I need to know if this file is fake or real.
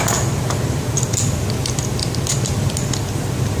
real